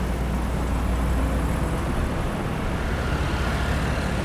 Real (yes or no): yes